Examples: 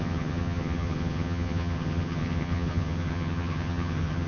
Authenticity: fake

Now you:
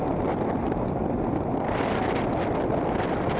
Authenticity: real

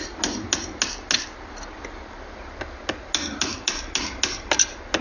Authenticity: real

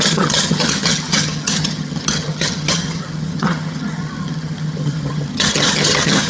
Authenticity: fake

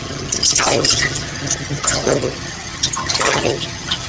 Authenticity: fake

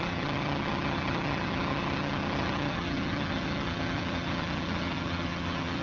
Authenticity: fake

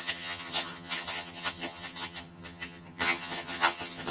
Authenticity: fake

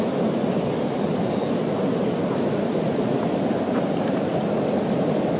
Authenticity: real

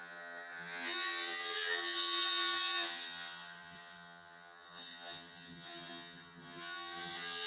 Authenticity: fake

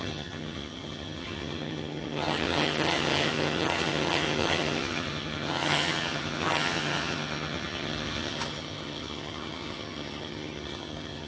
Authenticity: fake